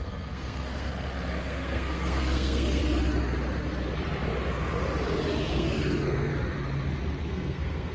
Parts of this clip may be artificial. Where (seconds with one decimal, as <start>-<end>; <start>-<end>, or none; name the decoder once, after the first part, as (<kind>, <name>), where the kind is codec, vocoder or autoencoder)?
0.0-0.9 (codec, SNAC); 1.4-2.8; 5.5-6.3; 7.3-7.9